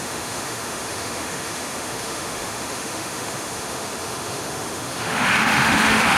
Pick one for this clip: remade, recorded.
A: remade